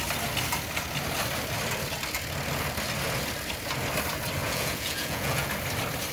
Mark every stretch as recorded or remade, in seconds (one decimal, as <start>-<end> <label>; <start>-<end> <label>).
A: 0.0-4.4 recorded; 4.4-5.5 remade; 5.5-6.1 recorded